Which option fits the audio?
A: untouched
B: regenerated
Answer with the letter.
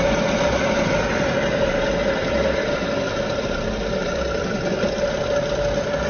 A